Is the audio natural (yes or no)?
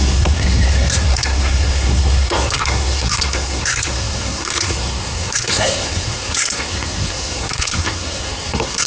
no